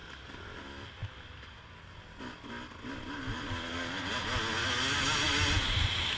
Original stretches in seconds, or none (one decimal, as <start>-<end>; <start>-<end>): 0.0-6.2